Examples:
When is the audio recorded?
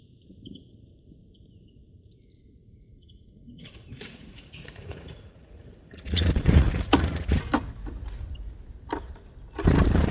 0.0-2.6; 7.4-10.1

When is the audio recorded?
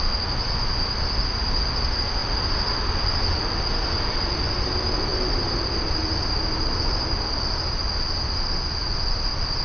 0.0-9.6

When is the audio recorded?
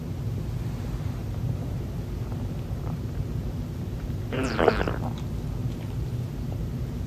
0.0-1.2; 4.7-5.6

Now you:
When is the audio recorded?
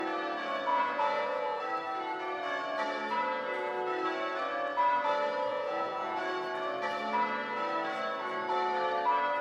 0.0-0.7; 1.6-5.5; 6.2-9.4